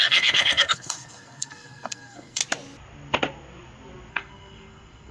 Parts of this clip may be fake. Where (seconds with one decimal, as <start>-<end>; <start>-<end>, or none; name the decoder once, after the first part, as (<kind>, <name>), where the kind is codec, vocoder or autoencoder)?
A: 0.0-2.4 (codec, SNAC); 4.1-5.1